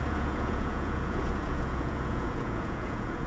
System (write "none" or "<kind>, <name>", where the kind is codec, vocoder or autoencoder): vocoder, Vocos